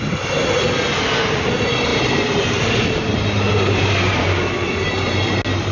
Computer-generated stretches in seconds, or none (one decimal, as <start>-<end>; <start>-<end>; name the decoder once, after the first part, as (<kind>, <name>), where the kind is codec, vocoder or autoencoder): 1.9-2.5 (vocoder, BigVGAN v2)